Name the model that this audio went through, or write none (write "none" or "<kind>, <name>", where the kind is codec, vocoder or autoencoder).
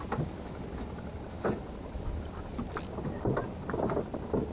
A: none